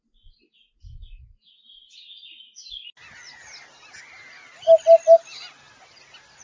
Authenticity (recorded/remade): recorded